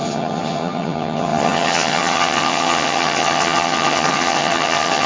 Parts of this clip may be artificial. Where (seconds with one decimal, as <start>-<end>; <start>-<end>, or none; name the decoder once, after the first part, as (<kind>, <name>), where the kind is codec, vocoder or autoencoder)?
0.0-5.1 (vocoder, HiFi-GAN)